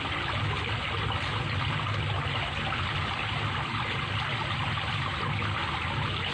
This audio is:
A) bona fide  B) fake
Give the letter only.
A